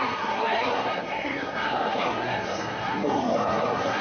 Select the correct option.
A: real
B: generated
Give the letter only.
B